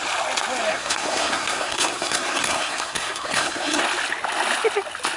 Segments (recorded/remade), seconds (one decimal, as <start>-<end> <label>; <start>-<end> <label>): 0.0-0.7 recorded; 0.7-3.8 remade; 3.8-5.2 recorded